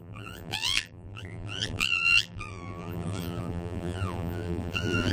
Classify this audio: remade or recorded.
remade